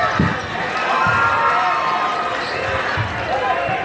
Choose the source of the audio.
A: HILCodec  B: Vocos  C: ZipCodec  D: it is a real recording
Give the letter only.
D